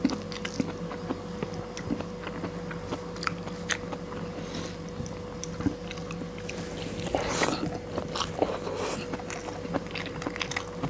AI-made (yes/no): no